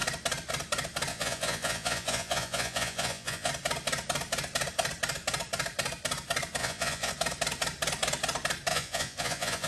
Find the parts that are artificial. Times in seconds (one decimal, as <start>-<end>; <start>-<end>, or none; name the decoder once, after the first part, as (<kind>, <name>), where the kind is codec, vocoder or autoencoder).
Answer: 1.1-3.5 (vocoder, Vocos); 6.6-7.1; 8.7-9.7

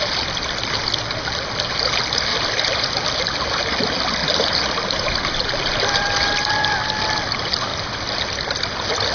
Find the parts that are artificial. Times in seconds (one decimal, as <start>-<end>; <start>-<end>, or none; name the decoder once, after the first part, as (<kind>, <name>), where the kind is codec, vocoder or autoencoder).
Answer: 4.2-6.5 (vocoder, BigVGAN v2); 7.7-8.2

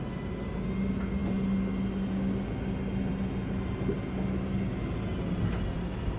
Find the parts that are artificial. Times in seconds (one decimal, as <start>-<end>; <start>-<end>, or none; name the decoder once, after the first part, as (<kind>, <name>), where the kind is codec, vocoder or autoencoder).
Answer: none

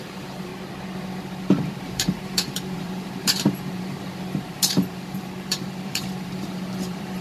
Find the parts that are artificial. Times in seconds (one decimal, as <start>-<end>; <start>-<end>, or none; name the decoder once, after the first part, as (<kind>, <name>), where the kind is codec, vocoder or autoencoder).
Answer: 0.0-0.5 (vocoder, BigVGAN v2); 1.8-7.2

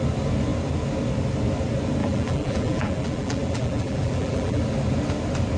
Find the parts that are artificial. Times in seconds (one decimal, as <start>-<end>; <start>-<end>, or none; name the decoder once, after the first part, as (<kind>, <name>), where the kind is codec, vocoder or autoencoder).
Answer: 2.0-4.6 (vocoder, BigVGAN v2)

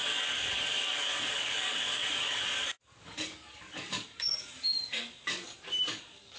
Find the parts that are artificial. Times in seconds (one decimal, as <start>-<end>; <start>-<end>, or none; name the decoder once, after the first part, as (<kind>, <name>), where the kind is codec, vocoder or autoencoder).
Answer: 0.0-6.4 (codec, DAC)

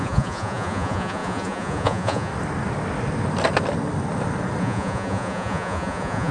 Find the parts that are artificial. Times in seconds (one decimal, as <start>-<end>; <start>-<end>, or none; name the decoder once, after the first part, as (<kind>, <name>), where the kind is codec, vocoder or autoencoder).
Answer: 0.0-2.3 (vocoder, Vocos); 4.6-6.3

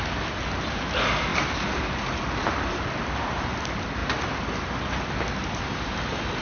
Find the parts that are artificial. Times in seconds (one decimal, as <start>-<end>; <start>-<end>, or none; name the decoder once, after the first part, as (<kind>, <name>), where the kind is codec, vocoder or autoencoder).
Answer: none